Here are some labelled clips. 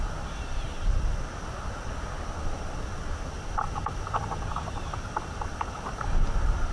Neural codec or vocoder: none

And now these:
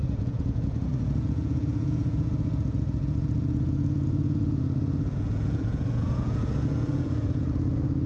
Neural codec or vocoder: vocoder, Vocos